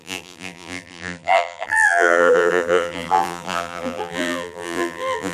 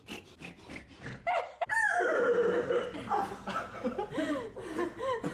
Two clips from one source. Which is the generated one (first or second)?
first